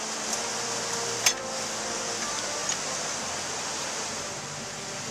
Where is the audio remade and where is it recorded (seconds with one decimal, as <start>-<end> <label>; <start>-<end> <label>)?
0.0-0.5 recorded; 0.5-1.8 remade; 1.8-5.1 recorded